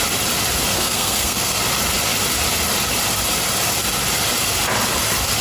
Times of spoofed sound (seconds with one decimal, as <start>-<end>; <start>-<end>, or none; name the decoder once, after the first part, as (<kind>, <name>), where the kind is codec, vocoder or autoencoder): 0.7-1.6 (codec, SNAC)